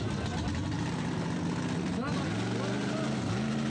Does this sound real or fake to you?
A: real